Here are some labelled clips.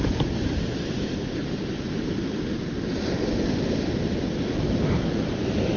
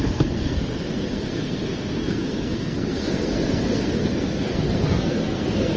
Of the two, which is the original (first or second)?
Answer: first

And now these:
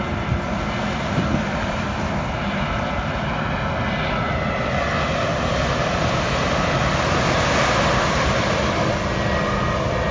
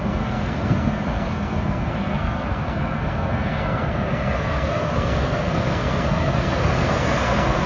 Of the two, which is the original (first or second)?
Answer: first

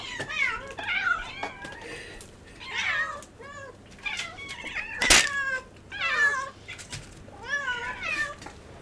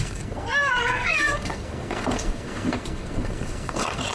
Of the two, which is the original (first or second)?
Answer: first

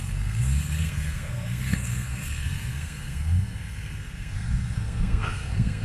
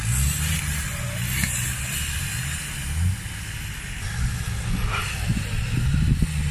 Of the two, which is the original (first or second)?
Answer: second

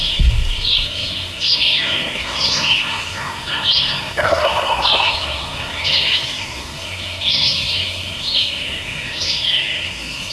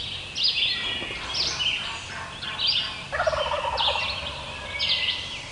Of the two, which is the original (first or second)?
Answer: second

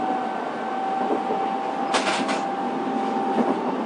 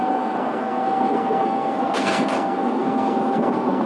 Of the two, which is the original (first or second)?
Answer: first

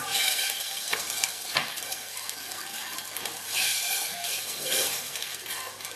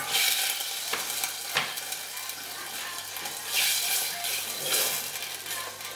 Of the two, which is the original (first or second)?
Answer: second